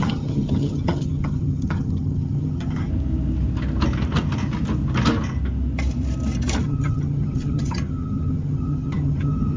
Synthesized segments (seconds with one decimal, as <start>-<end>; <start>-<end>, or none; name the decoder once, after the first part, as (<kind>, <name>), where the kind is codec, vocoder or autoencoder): 0.0-2.9 (vocoder, HiFi-GAN); 6.6-9.6

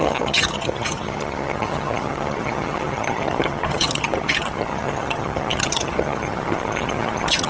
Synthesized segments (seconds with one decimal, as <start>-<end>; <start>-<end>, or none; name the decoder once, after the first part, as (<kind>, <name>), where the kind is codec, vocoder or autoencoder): 0.0-7.5 (vocoder, HiFi-GAN)